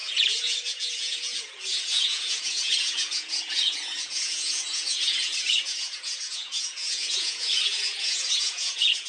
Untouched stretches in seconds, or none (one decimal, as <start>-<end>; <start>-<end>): none